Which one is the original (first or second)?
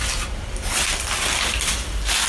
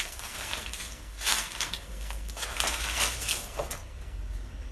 first